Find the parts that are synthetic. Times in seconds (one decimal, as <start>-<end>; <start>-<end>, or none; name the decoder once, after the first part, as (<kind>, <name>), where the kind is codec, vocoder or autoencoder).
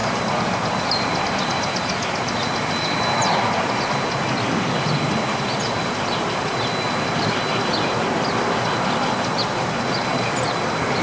0.0-3.4 (vocoder, BigVGAN v2)